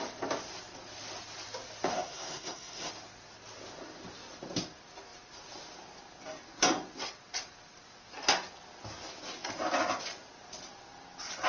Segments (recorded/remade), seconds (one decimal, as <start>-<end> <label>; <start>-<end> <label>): 0.0-1.9 recorded; 1.9-2.9 remade; 2.9-11.5 recorded